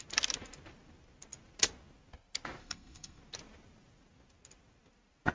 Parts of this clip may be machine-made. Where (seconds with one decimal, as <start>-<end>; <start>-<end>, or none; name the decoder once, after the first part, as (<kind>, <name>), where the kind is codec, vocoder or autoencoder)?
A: 2.6-3.2 (codec, SNAC)